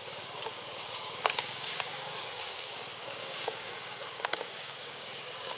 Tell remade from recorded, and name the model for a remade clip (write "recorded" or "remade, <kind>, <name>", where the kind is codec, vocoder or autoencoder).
remade, codec, DAC